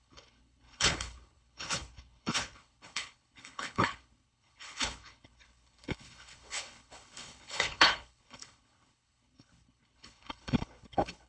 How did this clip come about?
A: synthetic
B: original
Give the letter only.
A